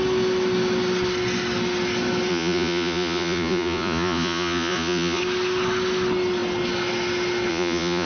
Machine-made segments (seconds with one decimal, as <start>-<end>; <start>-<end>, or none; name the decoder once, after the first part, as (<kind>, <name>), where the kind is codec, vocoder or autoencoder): 2.3-5.2 (vocoder, Vocos); 7.5-8.1